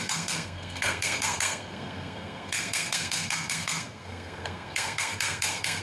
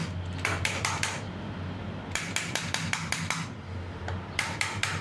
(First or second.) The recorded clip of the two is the second